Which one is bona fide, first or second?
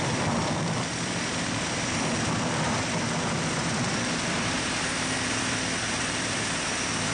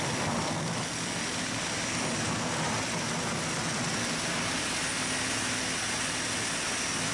second